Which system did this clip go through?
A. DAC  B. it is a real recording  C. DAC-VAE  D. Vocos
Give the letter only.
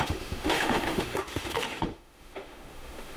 C